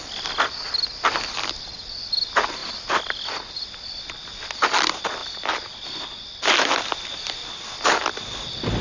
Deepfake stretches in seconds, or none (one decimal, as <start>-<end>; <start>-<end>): none